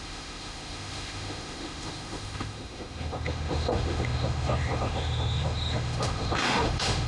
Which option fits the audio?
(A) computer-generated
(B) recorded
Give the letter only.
A